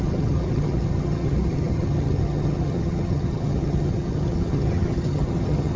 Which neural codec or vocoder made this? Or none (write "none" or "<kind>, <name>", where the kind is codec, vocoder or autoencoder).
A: vocoder, HiFi-GAN